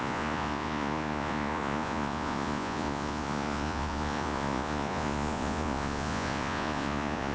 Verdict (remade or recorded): remade